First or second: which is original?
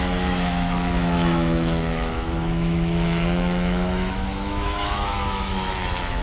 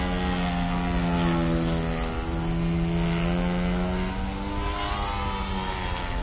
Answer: second